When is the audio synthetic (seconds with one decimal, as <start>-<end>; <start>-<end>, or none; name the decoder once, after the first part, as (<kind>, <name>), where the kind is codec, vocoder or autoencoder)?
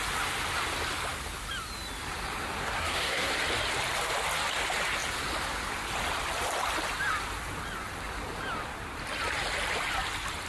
2.6-3.3 (codec, SNAC)